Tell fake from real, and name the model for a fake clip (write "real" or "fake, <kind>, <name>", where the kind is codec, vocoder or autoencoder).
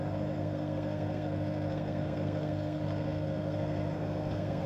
fake, codec, SNAC